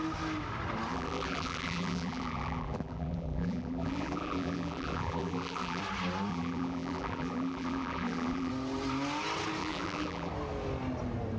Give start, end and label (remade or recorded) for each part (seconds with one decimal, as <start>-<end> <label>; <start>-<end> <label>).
0.0-0.9 recorded; 0.9-5.8 remade; 5.8-6.3 recorded; 6.3-8.5 remade; 8.5-9.6 recorded; 9.6-10.3 remade; 10.3-11.4 recorded